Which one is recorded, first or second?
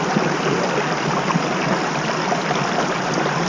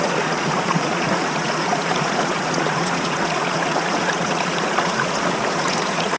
first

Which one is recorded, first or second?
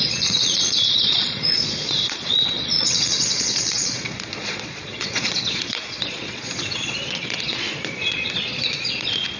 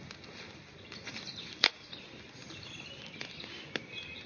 second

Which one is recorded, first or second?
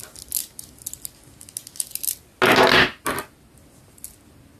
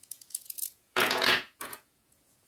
first